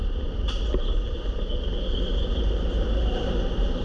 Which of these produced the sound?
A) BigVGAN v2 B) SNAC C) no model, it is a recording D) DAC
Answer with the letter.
A